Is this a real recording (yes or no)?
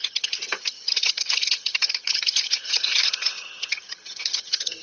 no